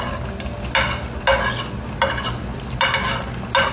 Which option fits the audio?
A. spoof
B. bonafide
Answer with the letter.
B